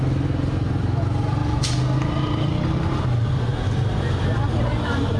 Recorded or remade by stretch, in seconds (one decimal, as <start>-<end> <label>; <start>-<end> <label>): 0.0-1.4 remade; 1.4-4.5 recorded; 4.5-5.2 remade